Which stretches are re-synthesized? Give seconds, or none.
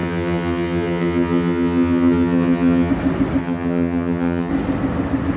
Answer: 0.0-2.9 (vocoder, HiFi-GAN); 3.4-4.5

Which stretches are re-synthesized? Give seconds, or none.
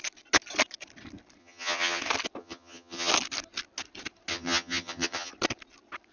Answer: 1.4-2.0 (vocoder, HiFi-GAN); 2.4-3.1; 4.3-5.3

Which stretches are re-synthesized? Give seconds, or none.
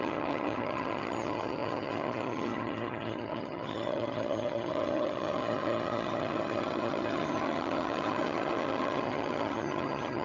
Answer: 0.0-10.2 (vocoder, HiFi-GAN)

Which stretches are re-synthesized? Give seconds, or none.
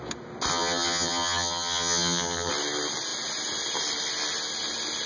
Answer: 0.5-2.5 (vocoder, HiFi-GAN)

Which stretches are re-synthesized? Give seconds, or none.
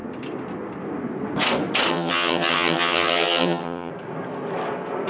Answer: 1.9-3.9 (vocoder, HiFi-GAN)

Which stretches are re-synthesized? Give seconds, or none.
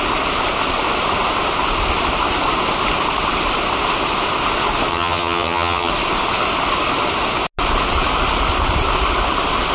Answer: 4.9-5.9 (vocoder, HiFi-GAN)